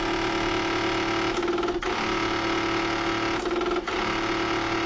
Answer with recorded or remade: recorded